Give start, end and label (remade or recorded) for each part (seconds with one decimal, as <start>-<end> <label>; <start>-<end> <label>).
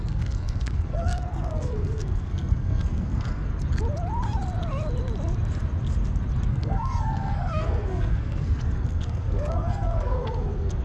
0.0-3.5 remade; 3.5-6.5 recorded; 6.5-10.8 remade